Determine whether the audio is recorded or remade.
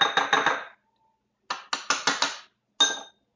recorded